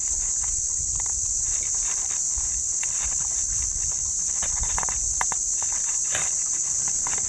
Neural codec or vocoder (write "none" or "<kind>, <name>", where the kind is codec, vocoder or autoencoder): vocoder, BigVGAN v2